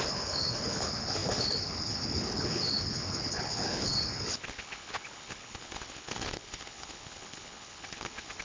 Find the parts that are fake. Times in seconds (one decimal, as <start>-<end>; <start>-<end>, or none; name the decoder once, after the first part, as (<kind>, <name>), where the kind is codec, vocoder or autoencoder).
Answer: 0.0-8.4 (codec, HILCodec)